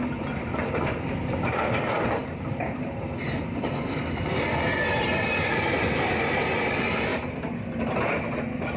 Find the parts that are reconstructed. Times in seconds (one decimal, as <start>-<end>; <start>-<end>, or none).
0.0-8.8